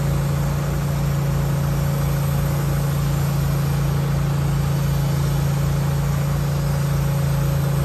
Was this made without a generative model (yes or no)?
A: yes